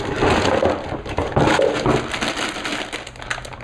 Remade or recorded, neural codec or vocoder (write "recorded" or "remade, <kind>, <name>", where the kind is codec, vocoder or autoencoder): recorded